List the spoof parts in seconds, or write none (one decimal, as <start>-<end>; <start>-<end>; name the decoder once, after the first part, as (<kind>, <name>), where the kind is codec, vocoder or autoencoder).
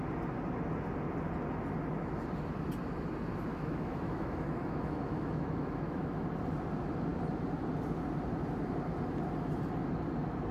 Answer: 3.5-6.2 (autoencoder, DAC-VAE)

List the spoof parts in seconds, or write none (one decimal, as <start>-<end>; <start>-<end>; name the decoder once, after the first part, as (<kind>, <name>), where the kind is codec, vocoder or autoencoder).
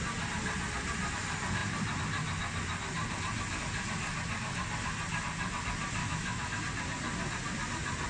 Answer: 6.0-6.6 (autoencoder, DAC-VAE)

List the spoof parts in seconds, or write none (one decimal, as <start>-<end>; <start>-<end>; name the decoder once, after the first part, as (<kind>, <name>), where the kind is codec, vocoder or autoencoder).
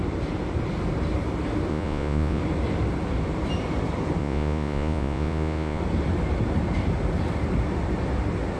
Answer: 1.7-2.4 (vocoder, Vocos); 4.2-5.8